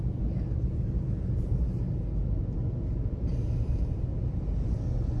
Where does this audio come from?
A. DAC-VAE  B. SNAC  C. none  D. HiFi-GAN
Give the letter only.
C